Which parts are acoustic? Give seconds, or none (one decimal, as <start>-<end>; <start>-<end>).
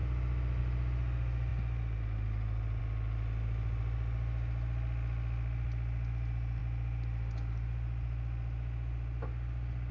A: 0.0-9.9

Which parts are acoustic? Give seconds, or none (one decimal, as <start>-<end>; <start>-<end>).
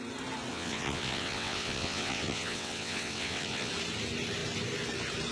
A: 0.0-0.5; 3.7-5.3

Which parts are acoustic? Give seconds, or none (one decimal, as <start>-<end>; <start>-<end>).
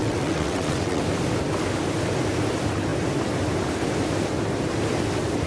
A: 1.0-5.5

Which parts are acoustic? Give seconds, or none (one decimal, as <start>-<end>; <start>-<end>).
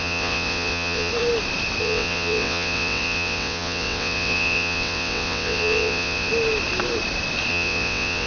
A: 1.1-1.8; 6.3-7.5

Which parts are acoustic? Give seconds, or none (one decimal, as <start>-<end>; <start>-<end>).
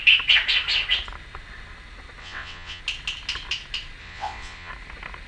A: 0.0-2.2; 2.8-4.0; 4.7-5.3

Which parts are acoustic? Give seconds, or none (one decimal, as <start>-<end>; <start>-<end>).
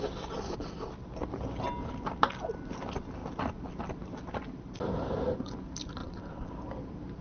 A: 0.0-6.0; 6.5-7.2